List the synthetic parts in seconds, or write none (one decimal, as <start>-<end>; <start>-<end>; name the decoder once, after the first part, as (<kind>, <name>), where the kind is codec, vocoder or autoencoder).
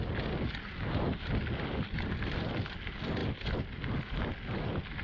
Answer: none